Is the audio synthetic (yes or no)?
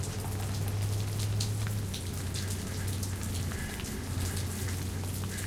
no